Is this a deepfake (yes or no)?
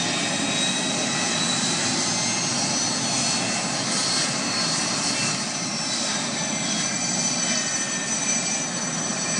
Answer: no